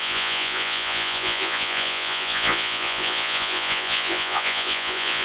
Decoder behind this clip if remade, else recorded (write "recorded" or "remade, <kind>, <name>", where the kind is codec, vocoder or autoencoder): remade, vocoder, Vocos